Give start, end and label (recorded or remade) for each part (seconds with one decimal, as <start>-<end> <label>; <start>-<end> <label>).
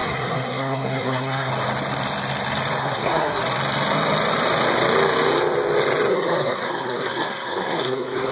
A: 0.0-1.5 remade; 1.5-2.8 recorded; 2.8-3.4 remade; 3.4-6.1 recorded; 6.1-8.3 remade